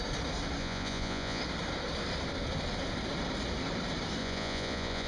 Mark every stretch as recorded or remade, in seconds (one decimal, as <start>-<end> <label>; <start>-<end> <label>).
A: 0.0-0.6 recorded; 0.6-1.4 remade; 1.4-4.2 recorded; 4.2-5.1 remade